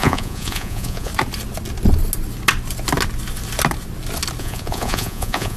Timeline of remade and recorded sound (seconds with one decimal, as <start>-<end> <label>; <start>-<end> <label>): 0.0-1.1 remade; 1.1-4.4 recorded; 4.4-5.6 remade

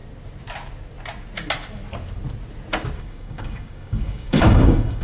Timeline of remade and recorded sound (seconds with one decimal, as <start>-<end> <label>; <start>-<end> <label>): 0.0-3.0 recorded; 3.0-5.0 remade

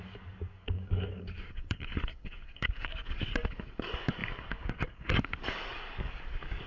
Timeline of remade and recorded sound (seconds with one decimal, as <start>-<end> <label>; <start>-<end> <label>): 0.0-6.7 remade

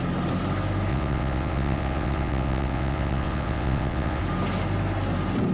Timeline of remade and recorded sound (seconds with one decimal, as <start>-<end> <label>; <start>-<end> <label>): 0.0-0.9 recorded; 0.9-4.2 remade; 4.2-5.5 recorded

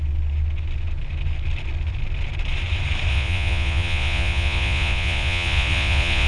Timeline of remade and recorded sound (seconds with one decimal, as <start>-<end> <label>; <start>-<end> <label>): 0.0-3.1 recorded; 3.1-6.3 remade

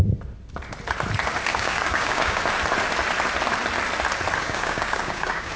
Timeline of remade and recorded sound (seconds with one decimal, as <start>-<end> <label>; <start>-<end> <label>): 0.0-1.5 recorded; 1.5-2.4 remade; 2.4-4.4 recorded; 4.4-5.6 remade

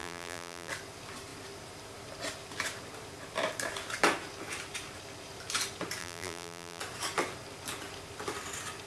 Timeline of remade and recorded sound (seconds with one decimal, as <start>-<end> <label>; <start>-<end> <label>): 0.0-0.7 remade; 0.7-6.0 recorded; 6.0-6.8 remade; 6.8-8.9 recorded